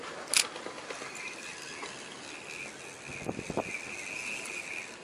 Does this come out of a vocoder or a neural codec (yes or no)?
no